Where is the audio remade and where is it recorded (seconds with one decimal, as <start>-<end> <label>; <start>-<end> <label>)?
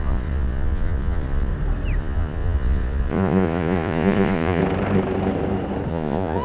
0.0-1.5 remade; 1.5-2.0 recorded; 2.0-4.6 remade; 4.6-5.9 recorded; 5.9-6.4 remade